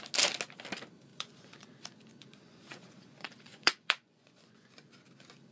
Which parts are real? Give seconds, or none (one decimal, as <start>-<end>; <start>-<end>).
0.0-1.1; 1.7-2.1; 4.9-5.5